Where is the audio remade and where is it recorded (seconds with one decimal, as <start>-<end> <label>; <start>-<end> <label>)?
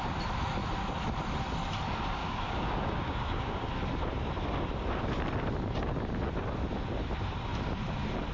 0.0-2.2 recorded; 2.2-3.7 remade; 3.7-8.3 recorded